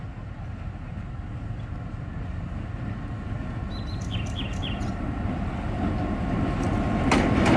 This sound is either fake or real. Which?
real